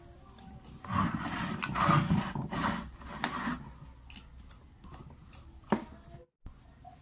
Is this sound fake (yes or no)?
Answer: no